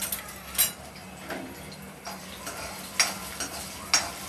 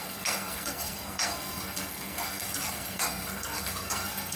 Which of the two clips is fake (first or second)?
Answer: second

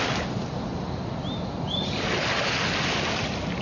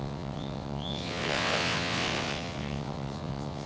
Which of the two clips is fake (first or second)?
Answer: second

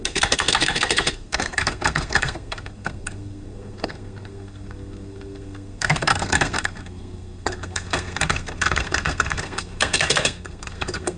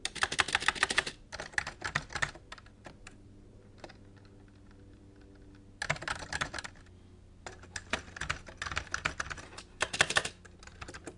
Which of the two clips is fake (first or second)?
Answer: first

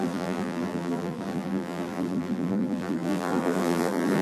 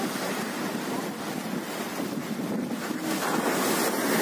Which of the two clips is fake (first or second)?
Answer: first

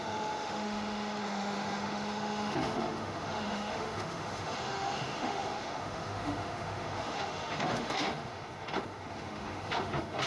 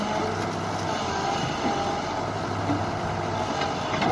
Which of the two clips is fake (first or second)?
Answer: first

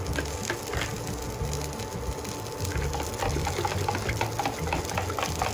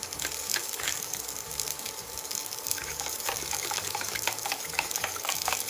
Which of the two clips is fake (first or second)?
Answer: second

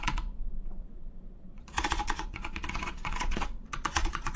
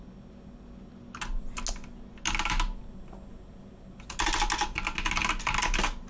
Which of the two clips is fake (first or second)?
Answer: first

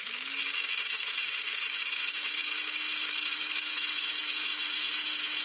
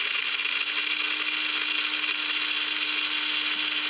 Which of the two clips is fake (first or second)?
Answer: first